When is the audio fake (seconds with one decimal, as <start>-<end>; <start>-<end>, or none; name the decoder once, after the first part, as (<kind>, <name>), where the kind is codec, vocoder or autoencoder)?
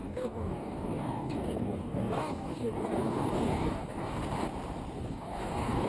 0.0-4.2 (codec, DAC); 5.0-5.9